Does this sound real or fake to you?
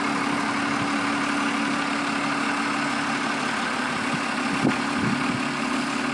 real